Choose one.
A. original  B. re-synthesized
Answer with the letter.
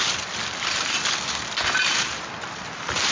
A